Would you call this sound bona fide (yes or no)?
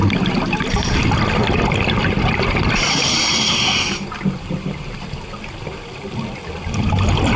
yes